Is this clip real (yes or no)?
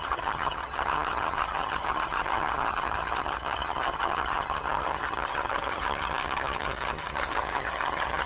no